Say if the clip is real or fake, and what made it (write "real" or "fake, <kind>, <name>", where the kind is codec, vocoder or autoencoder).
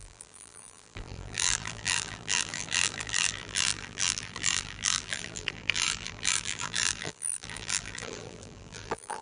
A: fake, vocoder, BigVGAN v2